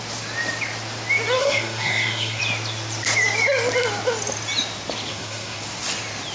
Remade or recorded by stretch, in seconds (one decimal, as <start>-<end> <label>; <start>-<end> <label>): 0.0-1.4 recorded; 1.4-2.4 remade; 2.4-5.1 recorded; 5.1-5.6 remade; 5.6-6.3 recorded